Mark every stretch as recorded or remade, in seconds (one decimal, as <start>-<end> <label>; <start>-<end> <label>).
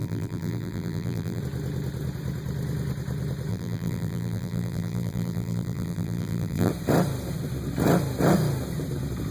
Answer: 0.0-1.4 remade; 1.4-3.5 recorded; 3.5-6.7 remade; 6.7-9.3 recorded